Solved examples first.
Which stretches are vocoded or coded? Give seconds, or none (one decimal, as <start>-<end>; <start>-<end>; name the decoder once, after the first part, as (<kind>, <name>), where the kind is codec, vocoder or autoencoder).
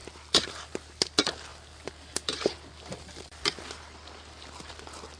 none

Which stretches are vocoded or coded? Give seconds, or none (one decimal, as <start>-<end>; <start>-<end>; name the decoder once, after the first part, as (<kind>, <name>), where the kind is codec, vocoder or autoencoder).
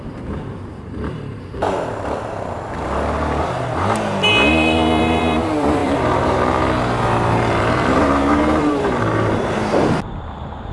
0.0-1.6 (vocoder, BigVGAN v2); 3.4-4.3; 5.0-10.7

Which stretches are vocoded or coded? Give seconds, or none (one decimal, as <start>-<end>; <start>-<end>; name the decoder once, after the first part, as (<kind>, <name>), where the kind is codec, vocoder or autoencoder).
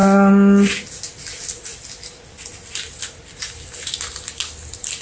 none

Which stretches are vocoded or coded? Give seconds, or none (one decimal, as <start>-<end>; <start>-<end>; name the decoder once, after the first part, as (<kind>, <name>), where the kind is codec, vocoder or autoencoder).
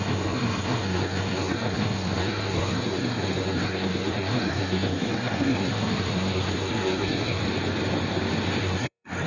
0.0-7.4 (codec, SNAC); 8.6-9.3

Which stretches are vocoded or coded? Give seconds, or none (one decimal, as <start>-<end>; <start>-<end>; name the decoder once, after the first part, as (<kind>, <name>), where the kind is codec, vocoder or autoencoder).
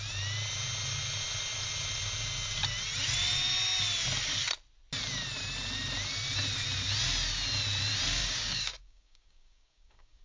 8.2-10.2 (codec, DAC)